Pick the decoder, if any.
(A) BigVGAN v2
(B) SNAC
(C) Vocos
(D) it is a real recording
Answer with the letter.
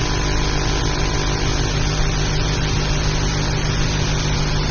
D